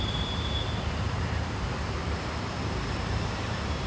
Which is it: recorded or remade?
remade